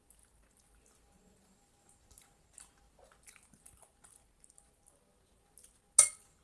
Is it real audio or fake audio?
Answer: real